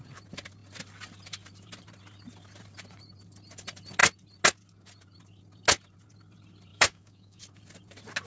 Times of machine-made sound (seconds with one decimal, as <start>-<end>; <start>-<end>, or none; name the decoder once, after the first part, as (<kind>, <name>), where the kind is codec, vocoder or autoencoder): 6.7-7.4 (autoencoder, DAC-VAE)